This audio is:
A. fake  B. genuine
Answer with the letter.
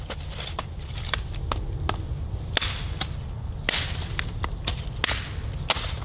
B